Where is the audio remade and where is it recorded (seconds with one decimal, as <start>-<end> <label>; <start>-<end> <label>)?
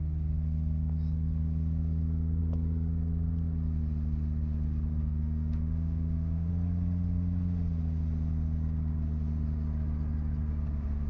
0.0-5.0 recorded; 5.0-6.5 remade; 6.5-11.1 recorded